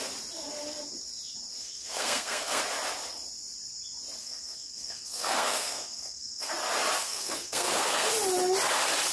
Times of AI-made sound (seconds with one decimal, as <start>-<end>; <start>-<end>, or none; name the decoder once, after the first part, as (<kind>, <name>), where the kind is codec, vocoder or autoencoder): 1.6-2.6 (codec, SNAC); 4.2-6.5; 7.0-8.1